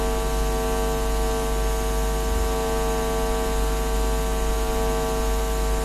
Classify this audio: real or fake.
real